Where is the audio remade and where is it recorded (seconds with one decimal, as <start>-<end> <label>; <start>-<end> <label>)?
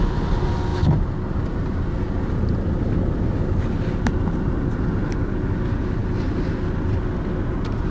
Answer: 0.0-7.9 recorded